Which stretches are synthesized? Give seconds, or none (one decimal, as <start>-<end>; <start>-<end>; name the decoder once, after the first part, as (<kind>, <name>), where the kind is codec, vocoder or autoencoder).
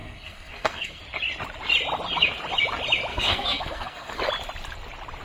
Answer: 0.0-1.0 (codec, SNAC); 3.1-4.2